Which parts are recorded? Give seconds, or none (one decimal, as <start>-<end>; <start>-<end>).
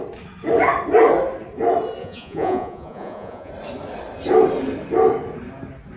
0.0-2.0; 3.5-6.0